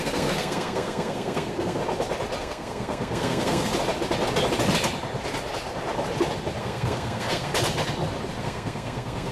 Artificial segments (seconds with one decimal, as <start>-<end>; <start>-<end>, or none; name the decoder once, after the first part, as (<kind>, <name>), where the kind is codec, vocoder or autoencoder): 0.0-1.8 (codec, SNAC); 2.4-3.7; 6.6-7.5; 8.4-9.3